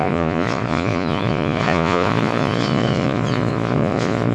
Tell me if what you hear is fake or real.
fake